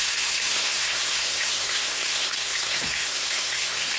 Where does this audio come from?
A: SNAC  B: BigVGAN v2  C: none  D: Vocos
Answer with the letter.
A